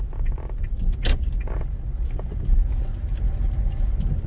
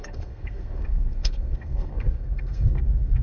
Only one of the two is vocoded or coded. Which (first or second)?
second